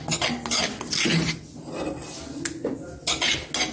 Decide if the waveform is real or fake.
real